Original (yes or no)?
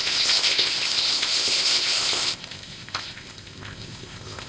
no